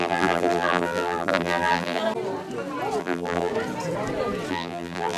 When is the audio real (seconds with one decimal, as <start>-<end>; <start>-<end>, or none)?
2.0-3.0; 3.5-4.5